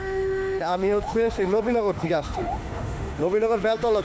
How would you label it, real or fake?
fake